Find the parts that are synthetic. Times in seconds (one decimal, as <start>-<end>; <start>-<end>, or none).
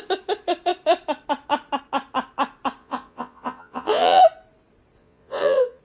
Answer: 2.8-4.2; 5.0-5.8